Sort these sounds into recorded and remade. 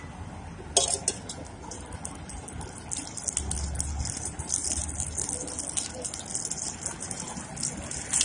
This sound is recorded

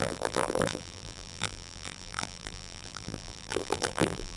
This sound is remade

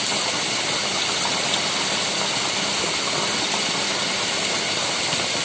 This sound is recorded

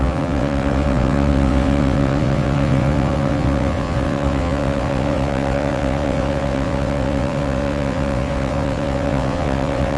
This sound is remade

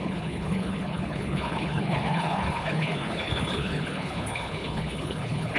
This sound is remade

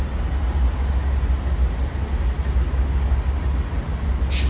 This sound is recorded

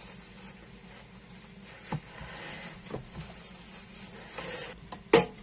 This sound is recorded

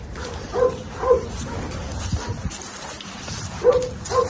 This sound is recorded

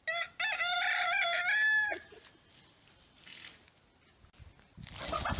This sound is recorded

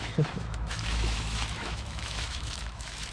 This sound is remade